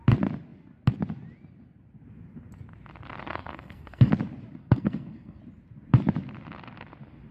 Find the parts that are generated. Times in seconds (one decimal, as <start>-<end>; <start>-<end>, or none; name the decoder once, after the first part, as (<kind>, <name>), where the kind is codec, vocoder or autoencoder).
3.3-4.1 (codec, SNAC); 4.6-5.4